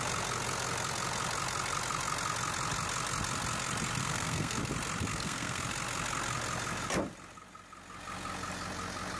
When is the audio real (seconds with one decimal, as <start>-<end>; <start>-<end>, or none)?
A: 0.0-4.0; 4.6-5.1; 5.6-9.2